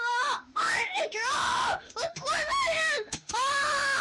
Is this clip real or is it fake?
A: fake